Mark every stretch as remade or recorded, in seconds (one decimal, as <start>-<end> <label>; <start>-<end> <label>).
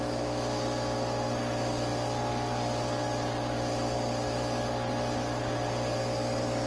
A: 0.0-6.7 recorded